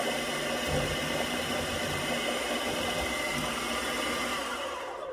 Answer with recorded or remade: remade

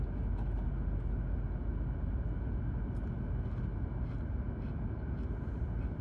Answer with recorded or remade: recorded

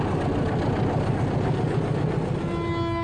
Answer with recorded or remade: recorded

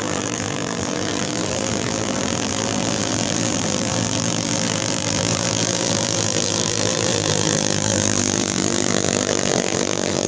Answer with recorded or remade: remade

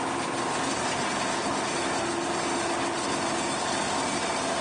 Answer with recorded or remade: recorded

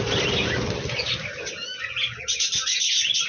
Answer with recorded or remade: recorded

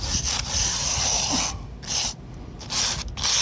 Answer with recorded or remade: recorded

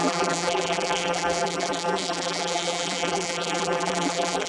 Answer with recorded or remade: remade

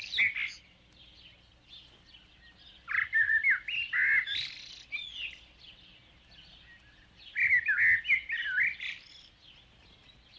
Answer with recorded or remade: recorded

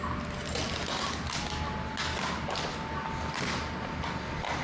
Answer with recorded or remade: recorded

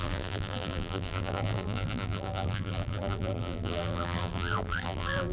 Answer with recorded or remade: remade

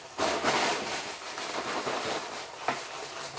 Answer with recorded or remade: recorded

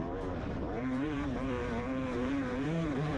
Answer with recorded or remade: remade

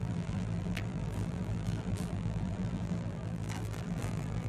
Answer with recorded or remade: remade